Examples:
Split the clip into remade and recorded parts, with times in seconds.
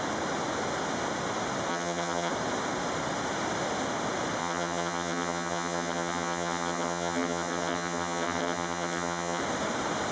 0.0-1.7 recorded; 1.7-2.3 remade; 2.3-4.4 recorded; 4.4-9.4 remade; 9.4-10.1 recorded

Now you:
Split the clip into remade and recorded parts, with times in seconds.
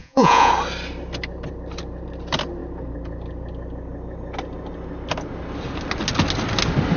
0.0-0.5 remade; 0.5-7.0 recorded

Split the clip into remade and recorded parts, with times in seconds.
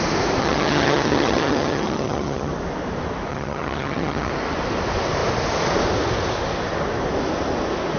0.0-0.4 recorded; 0.4-2.5 remade; 2.5-3.3 recorded; 3.3-4.3 remade; 4.3-8.0 recorded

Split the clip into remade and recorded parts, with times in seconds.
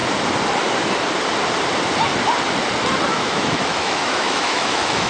0.0-3.1 recorded; 3.1-5.1 remade